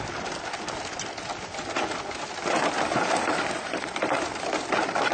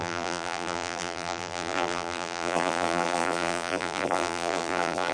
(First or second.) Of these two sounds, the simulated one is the second